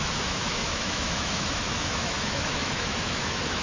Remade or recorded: remade